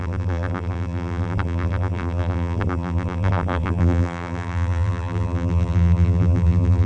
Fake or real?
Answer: fake